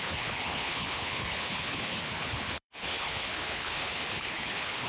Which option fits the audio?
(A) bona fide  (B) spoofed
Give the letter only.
B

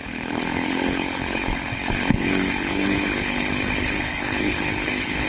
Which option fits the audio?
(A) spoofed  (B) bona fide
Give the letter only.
A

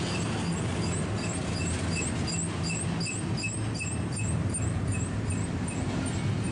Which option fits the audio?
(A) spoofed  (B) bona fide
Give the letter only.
B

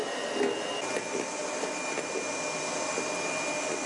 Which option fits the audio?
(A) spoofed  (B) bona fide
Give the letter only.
B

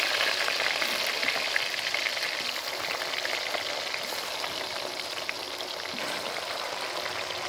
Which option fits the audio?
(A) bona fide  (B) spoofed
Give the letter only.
A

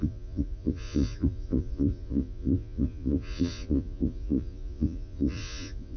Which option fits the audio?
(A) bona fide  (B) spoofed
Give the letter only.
B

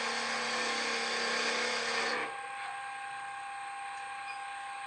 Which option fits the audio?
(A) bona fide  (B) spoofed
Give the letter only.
A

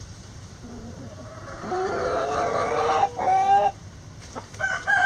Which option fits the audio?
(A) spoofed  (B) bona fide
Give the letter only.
A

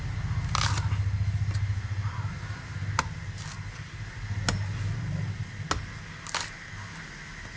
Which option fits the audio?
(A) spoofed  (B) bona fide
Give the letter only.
B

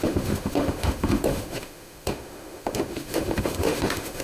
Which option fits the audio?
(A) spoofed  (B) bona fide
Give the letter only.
A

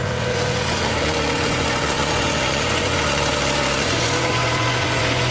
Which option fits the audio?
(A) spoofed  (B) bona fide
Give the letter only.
A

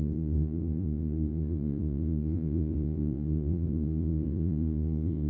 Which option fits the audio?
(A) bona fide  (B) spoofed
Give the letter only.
B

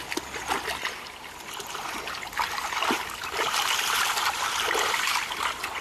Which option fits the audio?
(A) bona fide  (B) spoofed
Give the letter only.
A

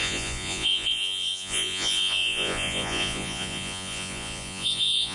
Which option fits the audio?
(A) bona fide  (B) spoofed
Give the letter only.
B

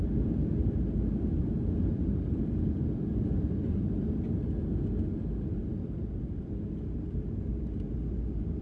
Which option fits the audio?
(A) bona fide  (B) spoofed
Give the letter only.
A